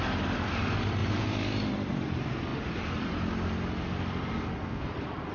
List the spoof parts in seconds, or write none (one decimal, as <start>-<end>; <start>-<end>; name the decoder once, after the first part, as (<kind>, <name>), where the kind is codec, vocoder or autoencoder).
1.0-1.9 (vocoder, BigVGAN v2)